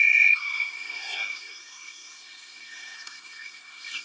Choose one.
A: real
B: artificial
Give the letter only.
B